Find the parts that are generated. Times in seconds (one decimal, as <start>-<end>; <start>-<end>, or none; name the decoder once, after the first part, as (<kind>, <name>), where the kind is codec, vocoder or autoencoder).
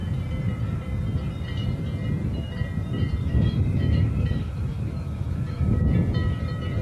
3.2-5.8 (autoencoder, DAC-VAE)